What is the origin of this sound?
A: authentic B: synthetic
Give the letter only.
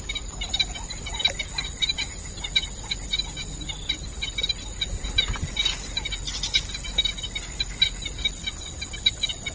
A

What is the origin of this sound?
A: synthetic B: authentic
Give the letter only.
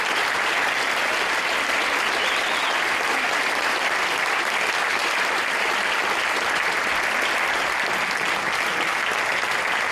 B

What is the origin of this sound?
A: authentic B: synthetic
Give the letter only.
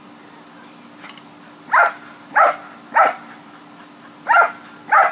A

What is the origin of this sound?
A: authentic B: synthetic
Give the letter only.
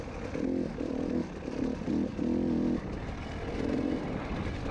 A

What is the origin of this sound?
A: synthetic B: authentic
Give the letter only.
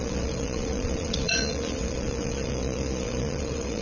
A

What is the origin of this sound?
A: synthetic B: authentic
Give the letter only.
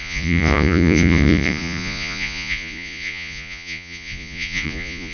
A